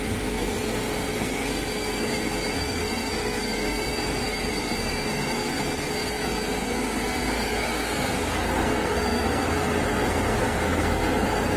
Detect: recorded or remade remade